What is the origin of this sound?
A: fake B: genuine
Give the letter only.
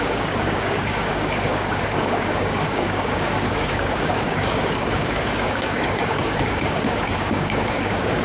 A